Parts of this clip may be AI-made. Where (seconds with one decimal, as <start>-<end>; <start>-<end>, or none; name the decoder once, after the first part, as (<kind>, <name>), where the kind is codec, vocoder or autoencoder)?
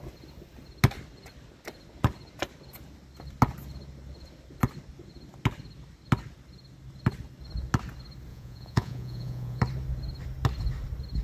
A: 8.3-9.6 (vocoder, Vocos)